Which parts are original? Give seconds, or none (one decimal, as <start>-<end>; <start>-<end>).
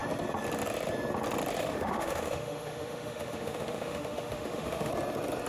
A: 0.0-1.6; 4.9-5.5